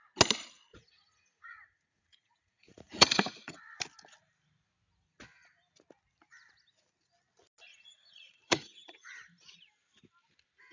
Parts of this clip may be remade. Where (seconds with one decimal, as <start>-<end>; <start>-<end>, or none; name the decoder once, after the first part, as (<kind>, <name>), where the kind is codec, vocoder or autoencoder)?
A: 0.7-3.6 (vocoder, Vocos); 7.7-9.1